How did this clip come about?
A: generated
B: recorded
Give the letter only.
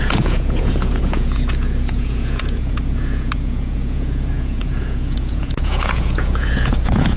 A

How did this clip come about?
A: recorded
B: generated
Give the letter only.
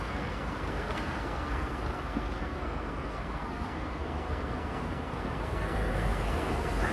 B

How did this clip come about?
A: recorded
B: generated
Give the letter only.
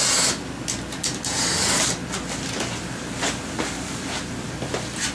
A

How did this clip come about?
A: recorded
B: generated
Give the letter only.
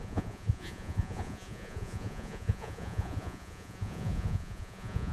B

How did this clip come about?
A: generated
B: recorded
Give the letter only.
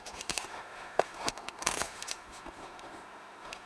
A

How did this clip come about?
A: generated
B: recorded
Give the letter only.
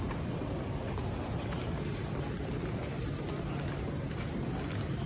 B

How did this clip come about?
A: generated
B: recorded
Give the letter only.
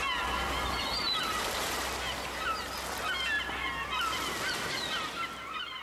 B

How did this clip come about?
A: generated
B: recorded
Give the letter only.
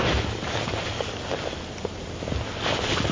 B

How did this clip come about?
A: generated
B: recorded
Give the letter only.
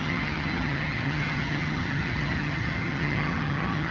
A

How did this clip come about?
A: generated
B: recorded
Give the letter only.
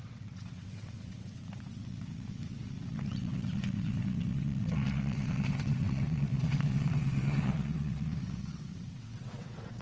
A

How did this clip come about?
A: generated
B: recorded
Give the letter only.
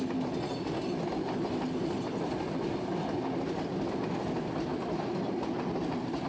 B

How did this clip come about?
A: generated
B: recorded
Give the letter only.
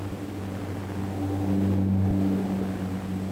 B